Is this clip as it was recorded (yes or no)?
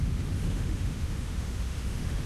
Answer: no